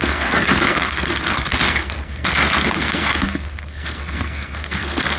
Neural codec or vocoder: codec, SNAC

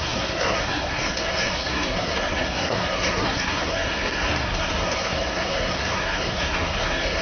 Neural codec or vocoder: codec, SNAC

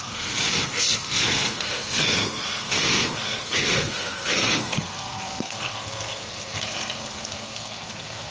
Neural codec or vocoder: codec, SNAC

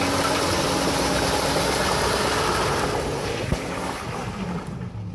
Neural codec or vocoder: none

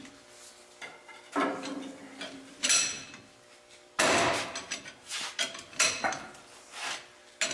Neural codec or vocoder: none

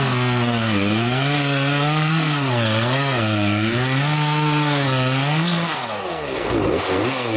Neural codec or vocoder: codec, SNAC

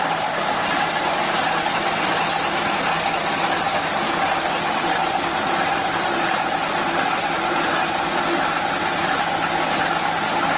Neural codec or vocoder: none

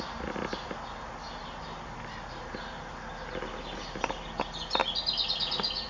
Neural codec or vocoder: none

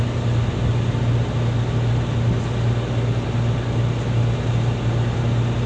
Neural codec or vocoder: none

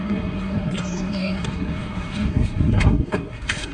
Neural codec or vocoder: codec, SNAC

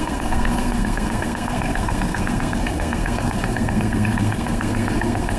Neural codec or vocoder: codec, SNAC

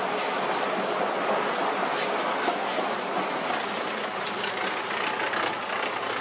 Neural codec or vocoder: none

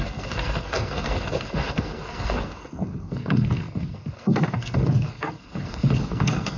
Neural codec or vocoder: codec, SNAC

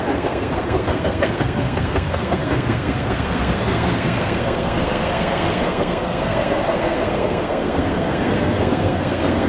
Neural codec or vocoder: codec, SNAC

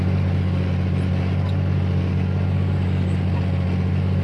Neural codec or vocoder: none